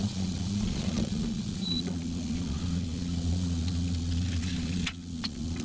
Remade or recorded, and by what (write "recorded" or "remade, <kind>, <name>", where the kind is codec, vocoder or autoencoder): remade, vocoder, Vocos